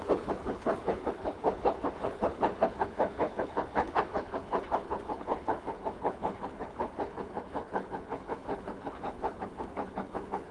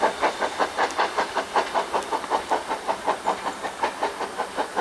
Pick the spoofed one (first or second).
first